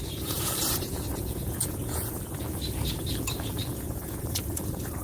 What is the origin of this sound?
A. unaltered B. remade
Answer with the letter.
B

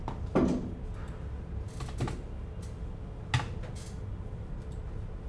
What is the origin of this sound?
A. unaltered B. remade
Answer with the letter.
A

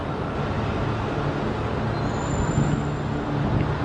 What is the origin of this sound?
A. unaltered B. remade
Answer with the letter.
A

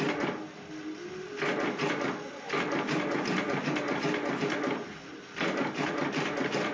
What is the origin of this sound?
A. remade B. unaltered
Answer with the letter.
B